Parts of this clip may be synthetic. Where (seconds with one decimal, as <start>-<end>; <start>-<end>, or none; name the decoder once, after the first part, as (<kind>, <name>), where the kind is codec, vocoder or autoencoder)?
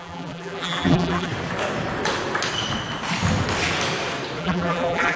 0.0-1.3 (vocoder, BigVGAN v2); 4.4-5.2